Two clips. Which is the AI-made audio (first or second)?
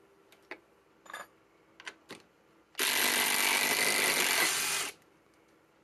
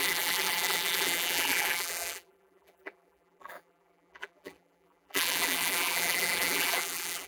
second